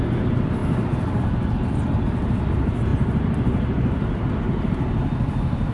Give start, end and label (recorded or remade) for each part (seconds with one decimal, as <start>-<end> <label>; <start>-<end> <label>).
0.0-2.9 remade; 2.9-5.7 recorded

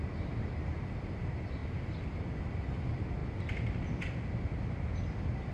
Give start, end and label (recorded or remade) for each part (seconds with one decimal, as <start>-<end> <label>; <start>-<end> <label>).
0.0-5.5 recorded

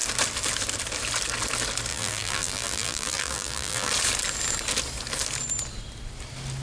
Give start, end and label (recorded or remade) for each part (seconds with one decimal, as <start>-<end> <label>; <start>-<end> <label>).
0.0-1.9 recorded; 1.9-3.9 remade; 3.9-6.6 recorded

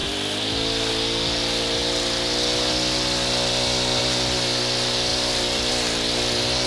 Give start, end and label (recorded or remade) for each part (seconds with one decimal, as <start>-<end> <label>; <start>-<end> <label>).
0.0-0.9 remade; 0.9-5.1 recorded; 5.1-5.7 remade; 5.7-6.7 recorded

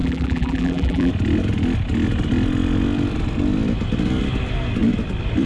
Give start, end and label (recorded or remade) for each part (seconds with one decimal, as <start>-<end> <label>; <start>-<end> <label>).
0.0-1.1 remade; 1.1-5.5 recorded

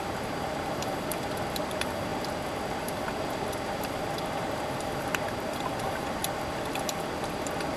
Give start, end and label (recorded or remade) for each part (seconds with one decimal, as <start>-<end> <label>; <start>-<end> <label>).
0.0-2.1 remade; 2.1-4.6 recorded; 4.6-6.2 remade; 6.2-7.8 recorded

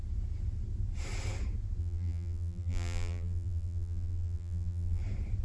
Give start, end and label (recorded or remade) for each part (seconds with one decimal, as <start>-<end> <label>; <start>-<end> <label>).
0.0-1.8 recorded; 1.8-5.0 remade; 5.0-5.4 recorded

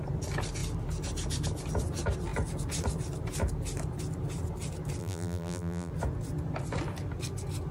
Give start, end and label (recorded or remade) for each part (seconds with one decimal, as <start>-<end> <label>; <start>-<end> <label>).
0.0-5.0 recorded; 5.0-5.9 remade; 5.9-7.7 recorded